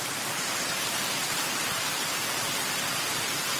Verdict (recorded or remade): remade